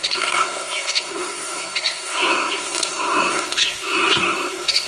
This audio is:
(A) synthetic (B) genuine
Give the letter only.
A